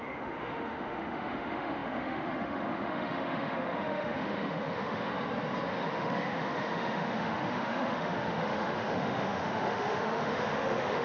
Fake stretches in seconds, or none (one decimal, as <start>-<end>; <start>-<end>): 0.0-5.1; 5.7-11.0